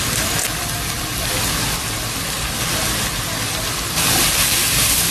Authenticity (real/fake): real